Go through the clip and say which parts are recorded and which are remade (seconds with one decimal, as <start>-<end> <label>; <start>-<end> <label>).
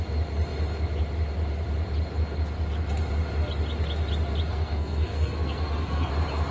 0.0-4.5 recorded; 4.5-6.1 remade; 6.1-6.5 recorded